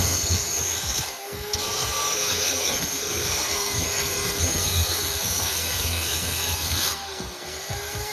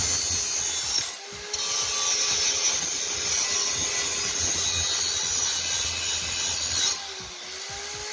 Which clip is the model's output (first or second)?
first